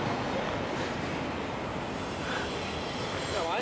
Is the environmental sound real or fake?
real